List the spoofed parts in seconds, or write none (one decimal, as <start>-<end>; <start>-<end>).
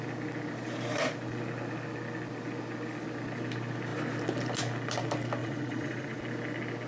5.4-6.2